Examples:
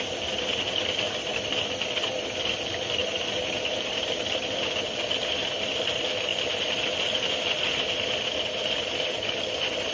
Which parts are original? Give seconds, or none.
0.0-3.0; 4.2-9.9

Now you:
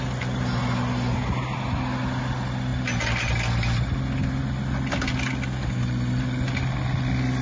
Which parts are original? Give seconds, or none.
0.0-7.4

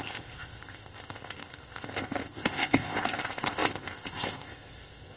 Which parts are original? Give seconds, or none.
none

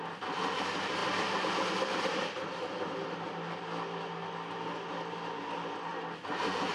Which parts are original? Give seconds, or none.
0.0-6.7

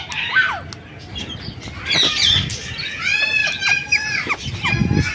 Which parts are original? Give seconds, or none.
0.0-3.4; 4.3-5.1

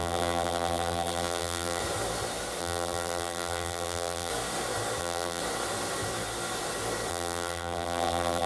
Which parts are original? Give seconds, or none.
1.8-2.6; 4.3-5.0; 5.4-7.1

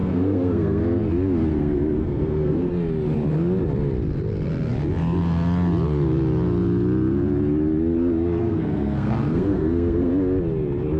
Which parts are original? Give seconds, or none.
0.8-1.5; 2.7-8.4; 10.1-11.0

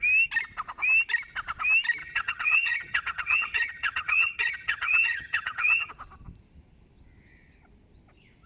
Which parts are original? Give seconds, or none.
0.0-2.0; 5.9-8.5